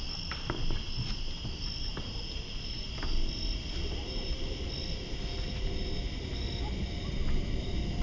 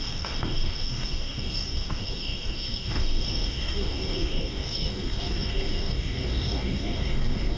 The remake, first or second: second